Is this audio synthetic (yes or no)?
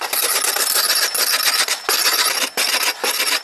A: no